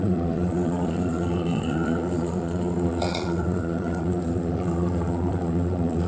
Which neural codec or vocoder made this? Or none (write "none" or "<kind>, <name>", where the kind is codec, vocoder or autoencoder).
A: vocoder, Vocos